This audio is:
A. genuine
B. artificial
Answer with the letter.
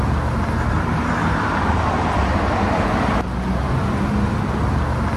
A